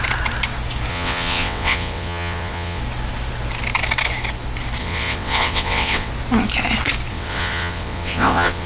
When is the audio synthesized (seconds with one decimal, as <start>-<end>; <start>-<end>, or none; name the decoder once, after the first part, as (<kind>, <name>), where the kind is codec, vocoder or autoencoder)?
0.9-2.8 (vocoder, WaveNeXt); 4.8-6.1; 7.1-8.7